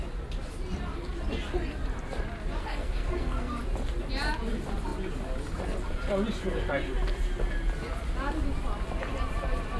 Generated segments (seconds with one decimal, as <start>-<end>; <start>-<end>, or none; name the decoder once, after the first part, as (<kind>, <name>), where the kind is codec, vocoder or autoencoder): 2.6-3.6 (codec, SNAC)